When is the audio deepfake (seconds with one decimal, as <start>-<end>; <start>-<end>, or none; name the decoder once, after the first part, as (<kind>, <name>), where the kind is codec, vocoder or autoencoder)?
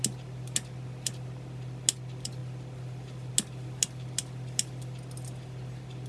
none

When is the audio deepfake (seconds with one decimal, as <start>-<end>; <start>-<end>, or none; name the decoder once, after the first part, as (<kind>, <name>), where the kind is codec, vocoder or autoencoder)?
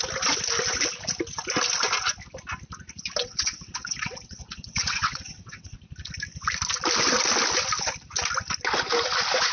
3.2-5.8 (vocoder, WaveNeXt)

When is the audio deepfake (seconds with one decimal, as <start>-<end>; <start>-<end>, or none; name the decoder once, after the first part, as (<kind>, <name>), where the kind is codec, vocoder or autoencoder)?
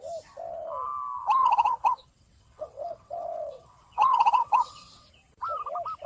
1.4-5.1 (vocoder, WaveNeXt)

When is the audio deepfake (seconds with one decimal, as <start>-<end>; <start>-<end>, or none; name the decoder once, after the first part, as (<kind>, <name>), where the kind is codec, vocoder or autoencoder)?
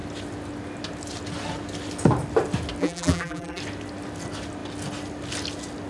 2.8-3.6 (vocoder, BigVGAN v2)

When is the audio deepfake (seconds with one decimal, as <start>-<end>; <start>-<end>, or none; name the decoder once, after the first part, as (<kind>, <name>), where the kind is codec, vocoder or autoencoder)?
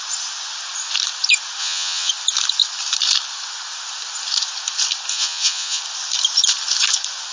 1.6-2.1 (vocoder, Vocos); 5.1-5.8